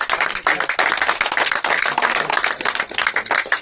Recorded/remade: recorded